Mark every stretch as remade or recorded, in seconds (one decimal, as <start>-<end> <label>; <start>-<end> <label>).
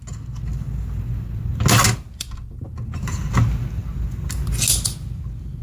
0.0-5.6 recorded